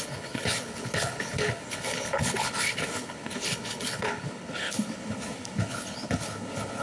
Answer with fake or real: fake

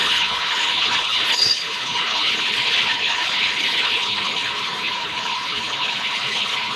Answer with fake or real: fake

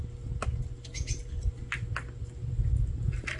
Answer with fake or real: real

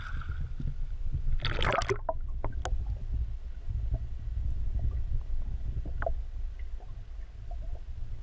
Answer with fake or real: real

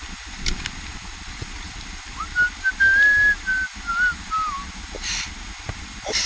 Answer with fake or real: real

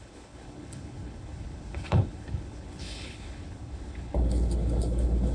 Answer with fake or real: fake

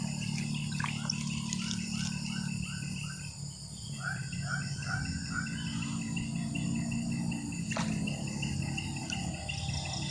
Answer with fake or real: real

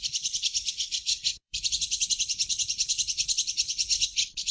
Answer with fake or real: fake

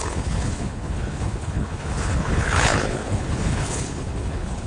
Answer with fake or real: fake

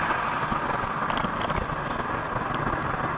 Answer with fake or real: real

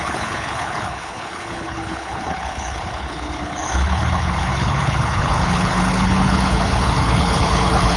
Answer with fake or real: fake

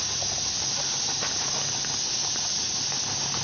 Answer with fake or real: real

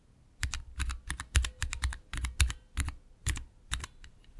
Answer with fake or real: real